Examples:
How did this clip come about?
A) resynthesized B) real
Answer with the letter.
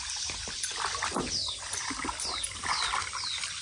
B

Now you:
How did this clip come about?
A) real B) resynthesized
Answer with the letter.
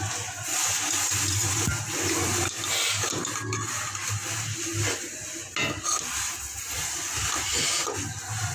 A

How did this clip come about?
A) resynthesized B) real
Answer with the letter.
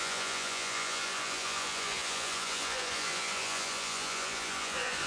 A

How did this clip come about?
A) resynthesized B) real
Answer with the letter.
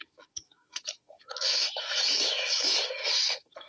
A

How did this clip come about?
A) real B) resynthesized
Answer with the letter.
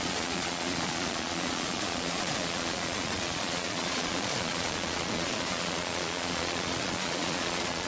B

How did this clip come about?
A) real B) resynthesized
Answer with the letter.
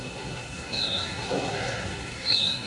B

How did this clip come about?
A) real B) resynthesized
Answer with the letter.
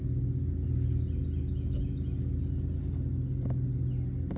A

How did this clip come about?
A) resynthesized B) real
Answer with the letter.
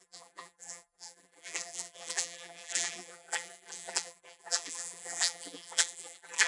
A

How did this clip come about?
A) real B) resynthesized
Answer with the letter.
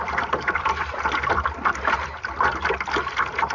A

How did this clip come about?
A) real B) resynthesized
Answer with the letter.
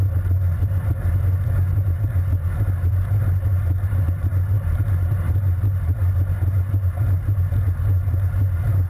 A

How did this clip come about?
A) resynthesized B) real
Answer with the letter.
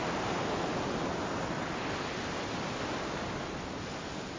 B